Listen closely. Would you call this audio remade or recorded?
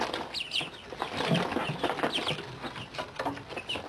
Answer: recorded